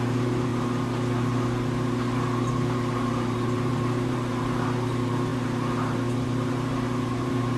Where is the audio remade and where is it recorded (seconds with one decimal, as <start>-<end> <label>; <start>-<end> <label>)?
0.0-0.5 remade; 0.5-2.5 recorded; 2.5-7.6 remade